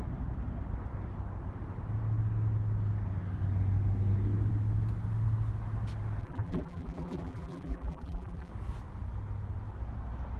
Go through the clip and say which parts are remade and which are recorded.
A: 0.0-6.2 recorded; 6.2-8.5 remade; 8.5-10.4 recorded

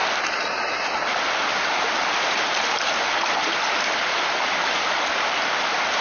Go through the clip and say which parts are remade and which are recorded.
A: 0.0-6.0 recorded

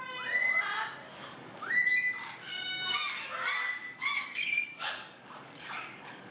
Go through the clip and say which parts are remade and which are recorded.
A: 0.0-1.2 recorded; 1.2-1.7 remade; 1.7-2.5 recorded; 2.5-6.3 remade

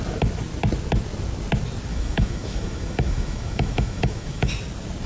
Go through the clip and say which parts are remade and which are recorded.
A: 0.0-1.9 recorded; 1.9-4.5 remade; 4.5-5.1 recorded

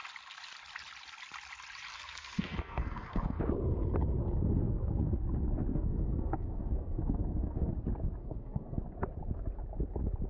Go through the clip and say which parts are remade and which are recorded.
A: 0.0-1.9 recorded; 1.9-3.4 remade; 3.4-5.7 recorded; 5.7-7.7 remade; 7.7-8.2 recorded; 8.2-8.8 remade; 8.8-10.3 recorded